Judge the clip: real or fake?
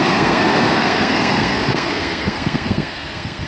fake